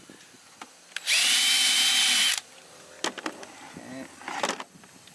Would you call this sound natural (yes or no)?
yes